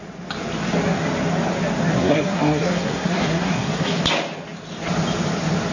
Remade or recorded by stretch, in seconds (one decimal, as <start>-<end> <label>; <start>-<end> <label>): 0.0-1.9 recorded; 1.9-4.0 remade; 4.0-5.7 recorded

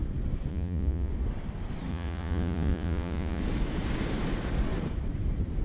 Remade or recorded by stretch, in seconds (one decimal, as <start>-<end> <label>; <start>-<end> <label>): 0.0-0.5 recorded; 0.5-1.1 remade; 1.1-1.9 recorded; 1.9-3.4 remade; 3.4-5.6 recorded